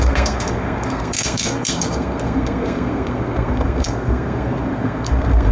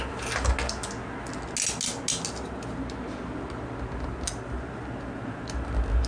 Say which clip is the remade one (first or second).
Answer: first